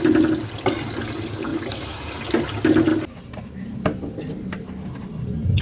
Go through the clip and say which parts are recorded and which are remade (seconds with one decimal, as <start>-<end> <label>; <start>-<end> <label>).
0.0-1.5 recorded; 1.5-2.1 remade; 2.1-2.9 recorded; 2.9-3.8 remade; 3.8-5.6 recorded